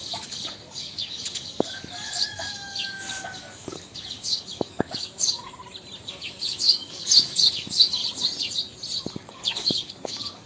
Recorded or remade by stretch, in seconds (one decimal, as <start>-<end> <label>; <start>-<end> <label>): 0.0-5.6 remade; 5.6-6.1 recorded; 6.1-8.0 remade; 8.0-9.3 recorded; 9.3-10.5 remade